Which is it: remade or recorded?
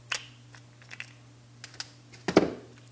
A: recorded